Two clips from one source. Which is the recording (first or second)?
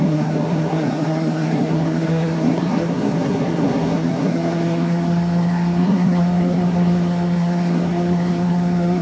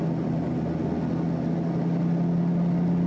second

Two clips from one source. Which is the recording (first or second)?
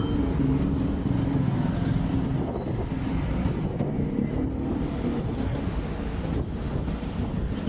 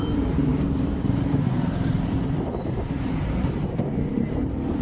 first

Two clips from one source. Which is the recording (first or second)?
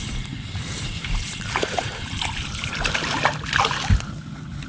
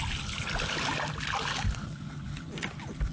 second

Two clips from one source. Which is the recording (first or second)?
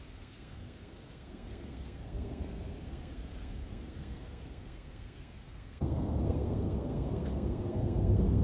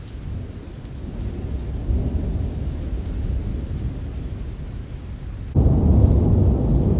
second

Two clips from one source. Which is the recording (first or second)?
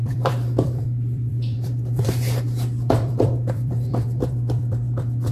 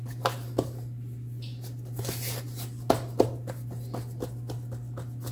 second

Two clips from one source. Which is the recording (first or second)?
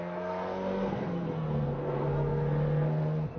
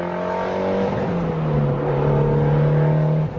second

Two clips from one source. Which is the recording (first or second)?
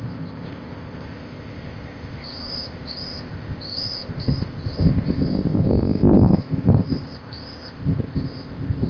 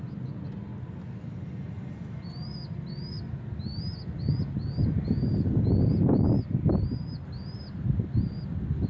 second